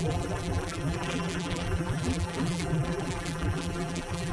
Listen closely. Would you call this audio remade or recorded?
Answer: remade